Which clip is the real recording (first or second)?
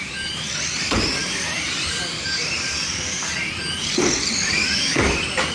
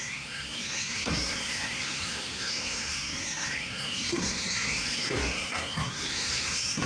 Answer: first